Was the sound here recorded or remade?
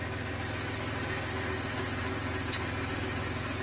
recorded